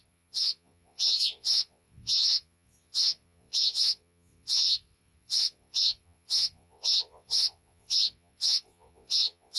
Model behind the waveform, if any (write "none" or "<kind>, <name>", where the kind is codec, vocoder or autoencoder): vocoder, Vocos